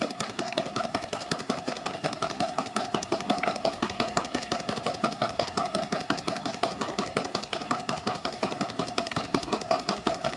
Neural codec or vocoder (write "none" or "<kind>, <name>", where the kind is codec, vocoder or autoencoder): codec, SNAC